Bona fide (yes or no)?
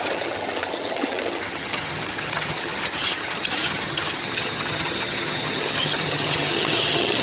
no